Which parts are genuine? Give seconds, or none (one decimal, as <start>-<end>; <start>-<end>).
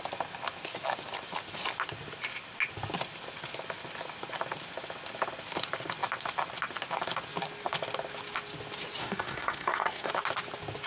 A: 0.0-9.0; 10.1-10.9